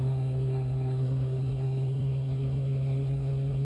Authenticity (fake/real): fake